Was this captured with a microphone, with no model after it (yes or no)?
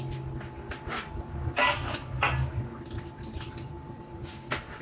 yes